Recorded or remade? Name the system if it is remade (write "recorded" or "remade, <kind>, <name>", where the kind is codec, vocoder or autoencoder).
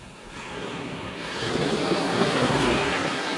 remade, codec, SNAC